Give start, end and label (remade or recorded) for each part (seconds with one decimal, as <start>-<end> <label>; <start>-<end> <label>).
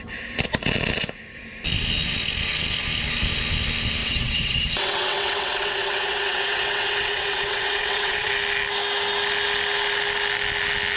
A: 0.0-4.0 recorded; 4.0-8.3 remade; 8.3-11.0 recorded